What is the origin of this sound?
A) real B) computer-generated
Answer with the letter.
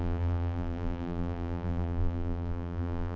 B